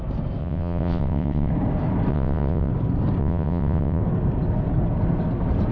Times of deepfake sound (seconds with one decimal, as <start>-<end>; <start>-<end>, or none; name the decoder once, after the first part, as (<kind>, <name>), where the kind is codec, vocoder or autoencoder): 0.4-1.5 (vocoder, WaveNeXt); 2.1-2.7; 3.2-4.0